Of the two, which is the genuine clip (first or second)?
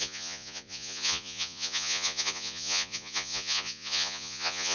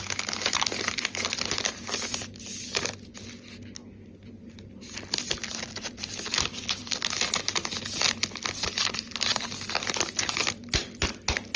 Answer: second